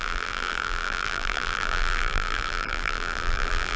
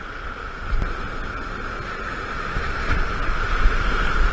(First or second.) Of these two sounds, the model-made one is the first